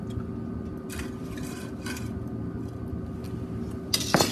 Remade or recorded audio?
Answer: recorded